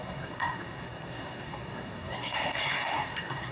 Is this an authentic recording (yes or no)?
no